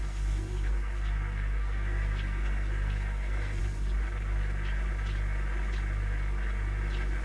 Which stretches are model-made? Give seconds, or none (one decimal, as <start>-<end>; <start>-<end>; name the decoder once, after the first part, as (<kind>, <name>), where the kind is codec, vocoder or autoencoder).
0.0-3.6 (codec, SNAC)

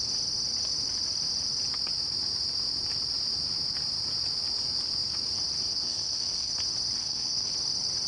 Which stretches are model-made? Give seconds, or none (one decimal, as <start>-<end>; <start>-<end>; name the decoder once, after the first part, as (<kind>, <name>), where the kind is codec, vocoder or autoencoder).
5.7-6.5 (codec, SNAC); 7.0-7.5